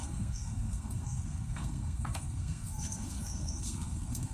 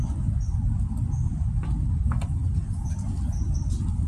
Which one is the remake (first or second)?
first